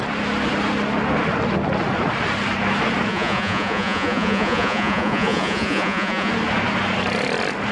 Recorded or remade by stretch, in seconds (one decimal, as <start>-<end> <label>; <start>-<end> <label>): 0.0-3.1 recorded; 3.1-6.3 remade; 6.3-7.7 recorded